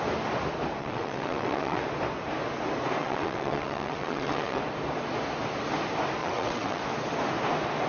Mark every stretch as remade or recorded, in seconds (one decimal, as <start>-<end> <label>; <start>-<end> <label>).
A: 0.0-0.8 recorded; 0.8-1.8 remade; 1.8-3.0 recorded; 3.0-4.6 remade; 4.6-6.2 recorded; 6.2-6.8 remade; 6.8-7.9 recorded